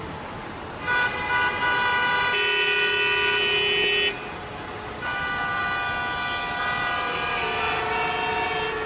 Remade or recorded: recorded